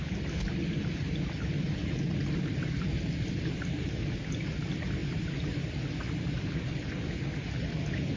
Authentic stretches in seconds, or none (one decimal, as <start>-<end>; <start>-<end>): 0.0-1.8; 3.9-5.0; 6.5-8.2